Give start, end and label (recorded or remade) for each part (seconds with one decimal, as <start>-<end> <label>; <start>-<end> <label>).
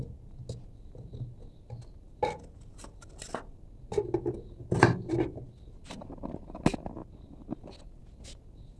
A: 0.0-8.8 recorded